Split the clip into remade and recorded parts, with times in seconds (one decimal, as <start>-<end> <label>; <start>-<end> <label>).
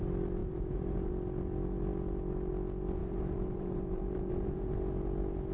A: 0.0-0.4 recorded; 0.4-1.1 remade; 1.1-3.0 recorded; 3.0-4.7 remade; 4.7-5.5 recorded